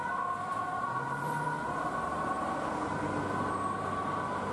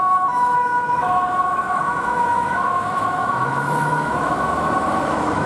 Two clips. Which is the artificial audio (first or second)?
second